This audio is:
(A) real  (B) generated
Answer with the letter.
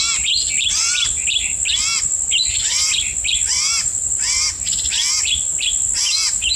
A